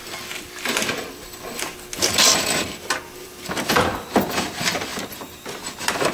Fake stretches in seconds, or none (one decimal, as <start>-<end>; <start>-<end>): 3.7-4.9